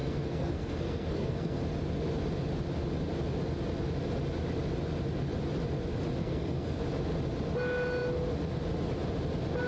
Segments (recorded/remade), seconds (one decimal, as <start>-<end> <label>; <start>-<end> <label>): 0.0-1.6 remade; 1.6-6.2 recorded; 6.2-6.8 remade; 6.8-9.7 recorded

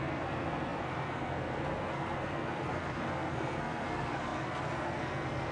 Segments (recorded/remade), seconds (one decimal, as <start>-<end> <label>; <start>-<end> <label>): 0.0-5.5 remade

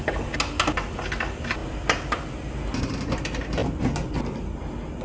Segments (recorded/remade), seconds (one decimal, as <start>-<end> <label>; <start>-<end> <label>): 0.0-5.0 recorded

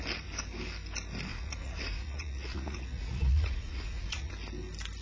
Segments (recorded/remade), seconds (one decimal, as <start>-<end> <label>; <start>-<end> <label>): 0.0-1.3 recorded; 1.3-4.3 remade; 4.3-5.0 recorded

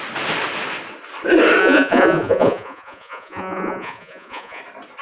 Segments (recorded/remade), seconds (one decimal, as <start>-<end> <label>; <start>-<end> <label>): 0.0-1.6 recorded; 1.6-4.6 remade; 4.6-5.0 recorded

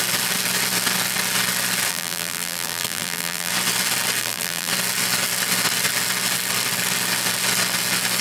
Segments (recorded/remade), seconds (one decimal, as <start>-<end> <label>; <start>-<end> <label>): 0.0-1.9 recorded; 1.9-3.5 remade; 3.5-4.2 recorded; 4.2-4.7 remade; 4.7-8.2 recorded